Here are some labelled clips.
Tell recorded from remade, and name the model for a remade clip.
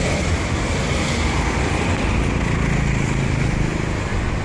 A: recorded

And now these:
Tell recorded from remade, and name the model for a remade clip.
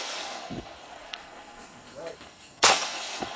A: remade, codec, SNAC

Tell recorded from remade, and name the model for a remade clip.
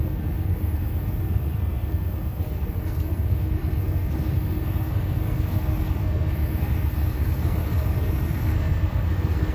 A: remade, codec, SNAC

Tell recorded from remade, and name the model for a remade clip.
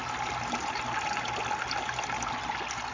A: recorded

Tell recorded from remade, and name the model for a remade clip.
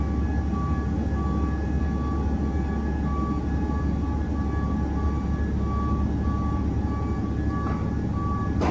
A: recorded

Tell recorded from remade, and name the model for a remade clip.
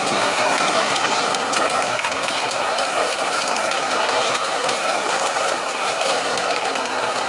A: remade, codec, SNAC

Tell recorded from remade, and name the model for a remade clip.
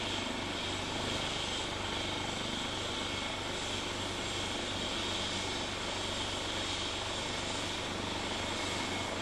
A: recorded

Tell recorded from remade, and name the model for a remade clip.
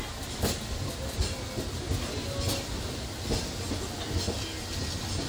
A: recorded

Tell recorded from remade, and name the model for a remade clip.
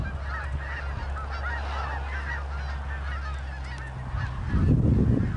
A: recorded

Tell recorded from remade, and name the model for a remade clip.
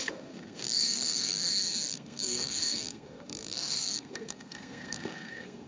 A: remade, codec, SNAC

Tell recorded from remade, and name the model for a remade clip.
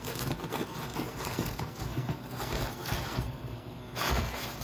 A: remade, codec, SNAC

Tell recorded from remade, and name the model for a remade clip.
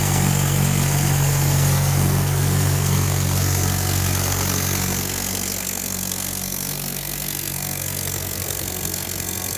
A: remade, codec, SNAC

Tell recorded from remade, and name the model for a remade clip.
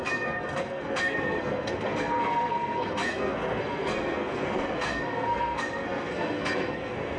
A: remade, codec, SNAC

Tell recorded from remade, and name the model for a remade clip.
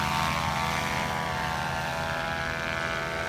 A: recorded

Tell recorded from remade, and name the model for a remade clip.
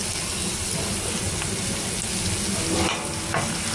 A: recorded